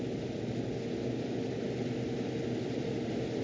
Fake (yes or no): no